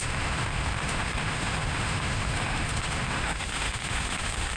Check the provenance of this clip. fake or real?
fake